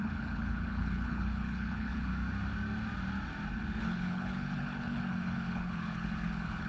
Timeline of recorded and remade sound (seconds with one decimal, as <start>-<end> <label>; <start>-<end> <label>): 0.0-2.1 remade; 2.1-3.8 recorded; 3.8-6.7 remade